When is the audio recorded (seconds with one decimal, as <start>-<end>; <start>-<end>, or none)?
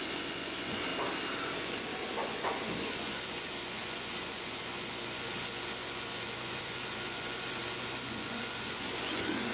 0.9-1.6